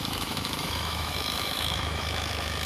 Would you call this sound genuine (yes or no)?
no